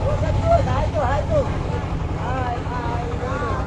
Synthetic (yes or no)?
yes